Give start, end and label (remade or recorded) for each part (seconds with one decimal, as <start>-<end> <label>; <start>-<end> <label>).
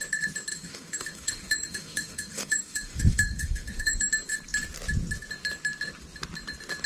0.0-0.5 recorded; 0.5-4.1 remade; 4.1-6.9 recorded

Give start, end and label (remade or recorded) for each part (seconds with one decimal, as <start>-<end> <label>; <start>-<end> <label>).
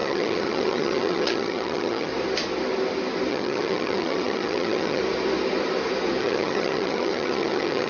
0.0-2.1 remade; 2.1-3.3 recorded; 3.3-5.0 remade; 5.0-6.2 recorded; 6.2-7.9 remade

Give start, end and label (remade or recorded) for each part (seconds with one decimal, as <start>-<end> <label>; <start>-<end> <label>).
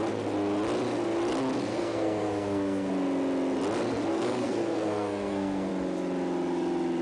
0.0-1.7 recorded; 1.7-2.9 remade; 2.9-4.1 recorded; 4.1-5.7 remade; 5.7-7.0 recorded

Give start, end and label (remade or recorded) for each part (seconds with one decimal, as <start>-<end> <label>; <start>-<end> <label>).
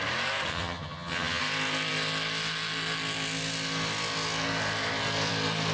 0.0-0.5 recorded; 0.5-1.4 remade; 1.4-5.7 recorded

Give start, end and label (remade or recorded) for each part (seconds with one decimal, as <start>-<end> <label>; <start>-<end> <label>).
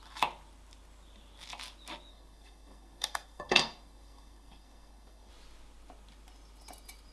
0.0-2.1 recorded; 2.1-5.3 remade; 5.3-7.1 recorded